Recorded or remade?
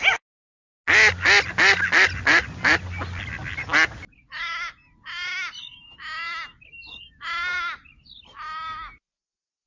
recorded